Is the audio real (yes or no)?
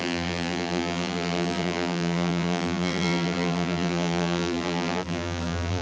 no